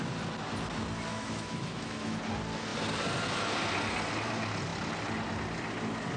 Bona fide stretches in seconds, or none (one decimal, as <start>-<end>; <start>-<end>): 0.0-1.1; 2.2-6.2